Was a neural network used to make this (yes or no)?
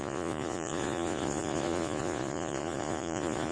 yes